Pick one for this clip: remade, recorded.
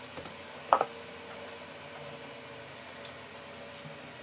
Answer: recorded